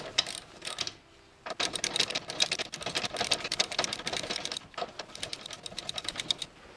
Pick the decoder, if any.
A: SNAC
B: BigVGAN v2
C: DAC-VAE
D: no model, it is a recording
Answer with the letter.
D